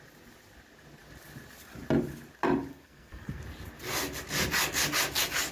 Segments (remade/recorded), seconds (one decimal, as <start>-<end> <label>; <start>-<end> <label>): 0.0-2.7 recorded; 2.7-3.4 remade; 3.4-5.5 recorded